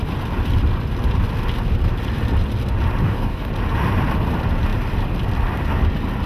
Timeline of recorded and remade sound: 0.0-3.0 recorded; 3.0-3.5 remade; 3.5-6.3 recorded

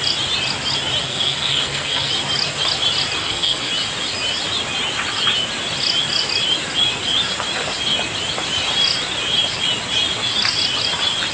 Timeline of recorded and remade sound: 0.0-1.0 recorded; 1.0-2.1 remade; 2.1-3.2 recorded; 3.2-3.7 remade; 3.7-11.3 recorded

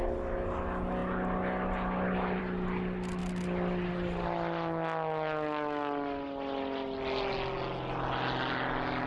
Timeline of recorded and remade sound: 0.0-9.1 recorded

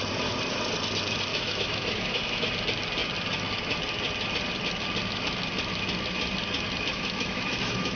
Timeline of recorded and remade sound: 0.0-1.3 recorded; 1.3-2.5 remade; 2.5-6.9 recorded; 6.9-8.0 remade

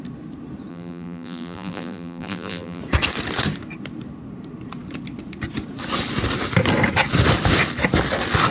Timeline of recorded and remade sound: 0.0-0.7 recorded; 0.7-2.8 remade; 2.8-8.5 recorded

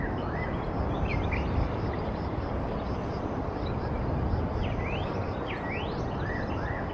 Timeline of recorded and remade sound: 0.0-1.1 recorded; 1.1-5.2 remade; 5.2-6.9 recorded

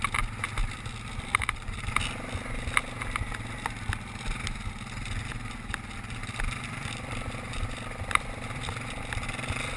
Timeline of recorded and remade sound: 0.0-0.6 recorded; 0.6-1.9 remade; 1.9-6.2 recorded; 6.2-9.0 remade; 9.0-9.8 recorded